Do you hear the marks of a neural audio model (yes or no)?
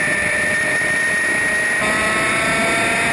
no